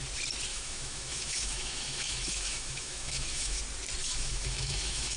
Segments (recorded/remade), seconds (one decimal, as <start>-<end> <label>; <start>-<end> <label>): 0.0-0.5 recorded; 0.5-3.6 remade; 3.6-4.0 recorded; 4.0-5.2 remade